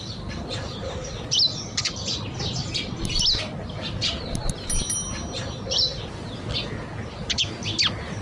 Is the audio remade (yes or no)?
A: no